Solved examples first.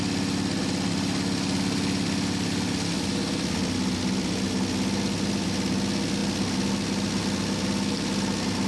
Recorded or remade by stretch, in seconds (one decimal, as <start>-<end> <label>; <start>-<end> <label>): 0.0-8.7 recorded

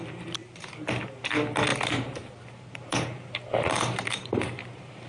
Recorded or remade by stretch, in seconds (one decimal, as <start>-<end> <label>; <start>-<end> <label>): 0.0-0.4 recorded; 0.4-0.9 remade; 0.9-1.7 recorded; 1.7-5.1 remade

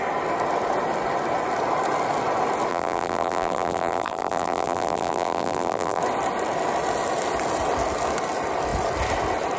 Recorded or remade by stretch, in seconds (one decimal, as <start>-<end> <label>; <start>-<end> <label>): 0.0-2.7 recorded; 2.7-6.0 remade; 6.0-9.6 recorded